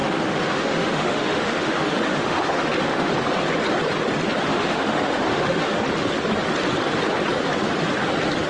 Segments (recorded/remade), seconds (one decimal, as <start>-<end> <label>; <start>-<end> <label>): 0.0-3.1 remade; 3.1-4.5 recorded; 4.5-5.8 remade; 5.8-8.5 recorded